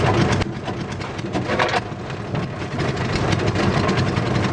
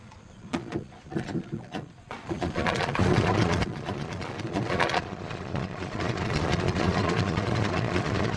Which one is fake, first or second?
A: second